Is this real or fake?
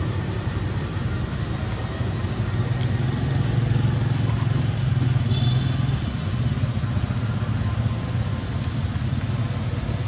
real